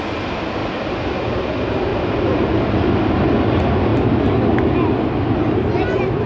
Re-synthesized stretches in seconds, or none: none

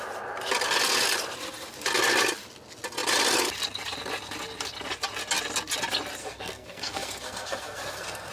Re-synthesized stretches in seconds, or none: 6.2-8.3 (codec, SNAC)

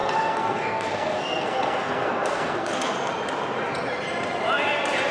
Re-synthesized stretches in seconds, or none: 0.0-3.1 (codec, SNAC)

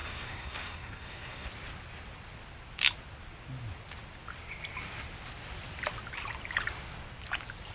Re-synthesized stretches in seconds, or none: 0.0-1.5 (codec, SNAC)

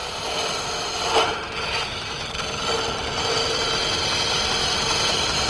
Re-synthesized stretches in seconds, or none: none

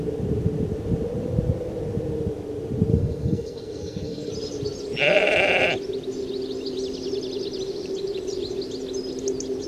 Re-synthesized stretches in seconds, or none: 2.9-4.3 (codec, SNAC)

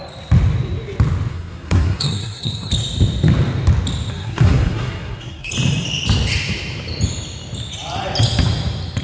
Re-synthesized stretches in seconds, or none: 1.3-2.7 (codec, SNAC); 4.1-5.5

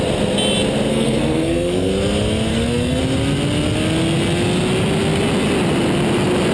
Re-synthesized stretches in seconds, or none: 0.9-1.9 (codec, SNAC); 2.5-3.0